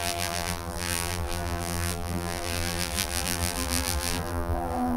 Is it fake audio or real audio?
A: fake